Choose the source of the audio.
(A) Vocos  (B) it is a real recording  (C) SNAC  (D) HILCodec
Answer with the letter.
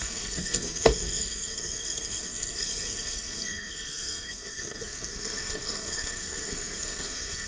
C